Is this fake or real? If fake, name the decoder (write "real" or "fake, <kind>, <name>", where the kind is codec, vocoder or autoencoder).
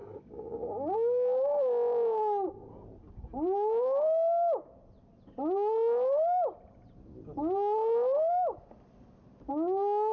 real